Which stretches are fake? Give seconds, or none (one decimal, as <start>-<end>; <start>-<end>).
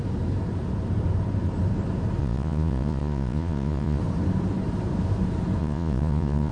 2.2-4.0; 5.6-6.5